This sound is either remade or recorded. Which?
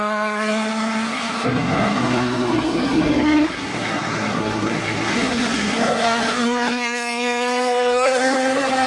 remade